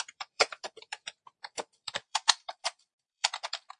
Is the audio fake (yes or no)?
yes